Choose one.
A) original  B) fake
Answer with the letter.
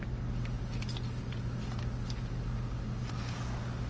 A